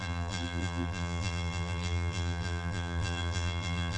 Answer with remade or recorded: remade